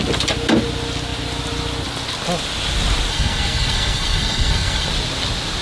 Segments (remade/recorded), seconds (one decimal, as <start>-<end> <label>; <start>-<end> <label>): 0.0-3.1 recorded; 3.1-4.9 remade; 4.9-5.6 recorded